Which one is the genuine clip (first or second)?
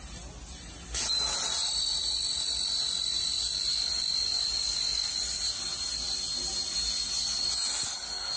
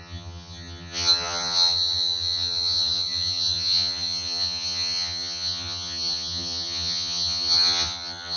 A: first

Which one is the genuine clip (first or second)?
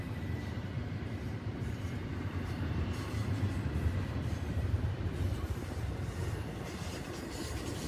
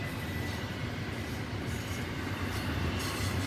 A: second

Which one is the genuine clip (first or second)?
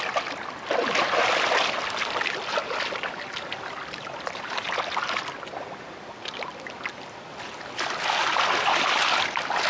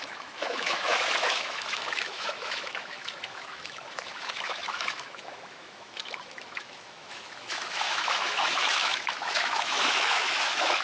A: first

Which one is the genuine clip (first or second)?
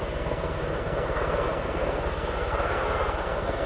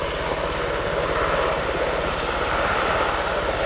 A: second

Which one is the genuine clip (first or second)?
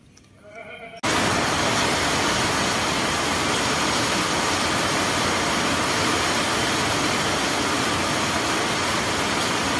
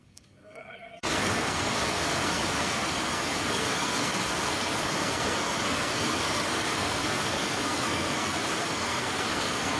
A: first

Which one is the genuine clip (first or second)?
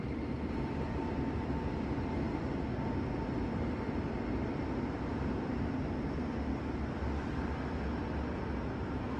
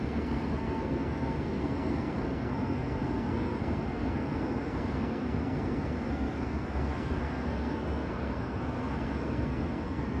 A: first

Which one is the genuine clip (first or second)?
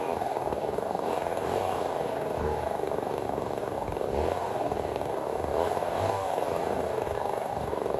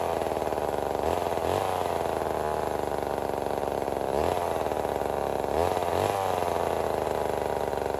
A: second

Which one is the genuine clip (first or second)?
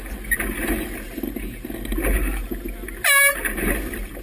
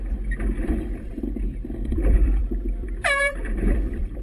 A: first